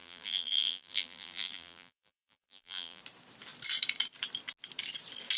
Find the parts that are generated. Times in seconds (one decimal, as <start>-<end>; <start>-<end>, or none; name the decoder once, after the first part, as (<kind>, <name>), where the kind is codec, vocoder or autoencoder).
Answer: 0.0-3.0 (vocoder, BigVGAN v2)